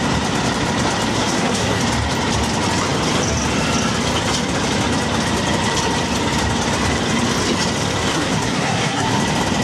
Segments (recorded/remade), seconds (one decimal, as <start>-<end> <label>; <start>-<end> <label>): 0.0-1.1 recorded; 1.1-1.8 remade; 1.8-8.1 recorded; 8.1-9.2 remade; 9.2-9.6 recorded